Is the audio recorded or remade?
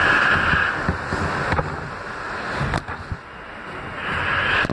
recorded